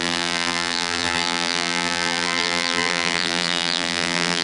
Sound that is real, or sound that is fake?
fake